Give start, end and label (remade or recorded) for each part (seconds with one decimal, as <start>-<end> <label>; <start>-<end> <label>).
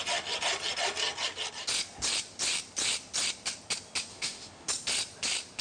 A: 0.0-4.1 recorded; 4.1-4.7 remade; 4.7-5.6 recorded